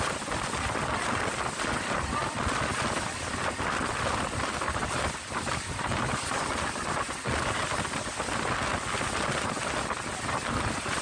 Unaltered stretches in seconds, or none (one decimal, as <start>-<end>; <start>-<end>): 0.0-11.0